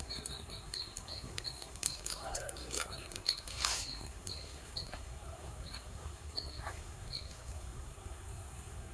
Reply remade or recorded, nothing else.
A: remade